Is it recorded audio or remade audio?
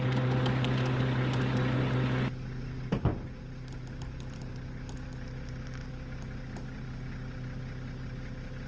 recorded